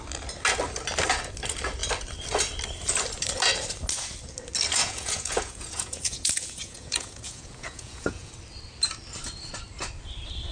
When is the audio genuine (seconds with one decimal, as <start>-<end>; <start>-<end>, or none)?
0.0-4.8; 8.3-10.5